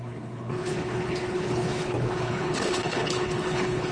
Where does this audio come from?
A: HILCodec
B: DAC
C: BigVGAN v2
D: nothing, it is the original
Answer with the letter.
A